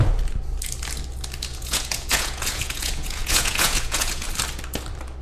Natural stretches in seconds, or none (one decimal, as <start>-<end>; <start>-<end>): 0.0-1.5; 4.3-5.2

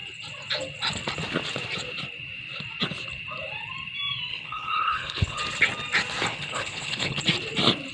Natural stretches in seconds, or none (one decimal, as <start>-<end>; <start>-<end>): 0.0-4.3; 5.4-6.3; 7.2-7.9

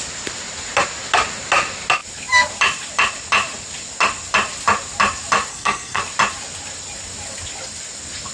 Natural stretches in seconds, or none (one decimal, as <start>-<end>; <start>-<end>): 0.0-5.5; 6.0-8.3